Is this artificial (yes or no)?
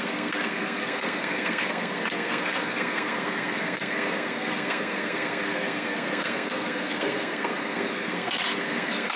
yes